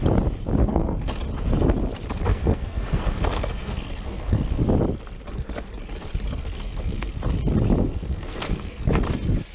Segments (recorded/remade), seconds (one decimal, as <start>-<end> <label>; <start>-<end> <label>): 0.0-0.6 recorded; 0.6-1.1 remade; 1.1-2.3 recorded; 2.3-4.6 remade; 4.6-6.4 recorded; 6.4-7.1 remade; 7.1-7.8 recorded; 7.8-8.9 remade; 8.9-9.5 recorded